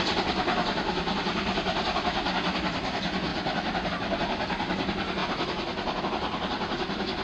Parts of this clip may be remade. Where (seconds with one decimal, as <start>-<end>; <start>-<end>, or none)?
none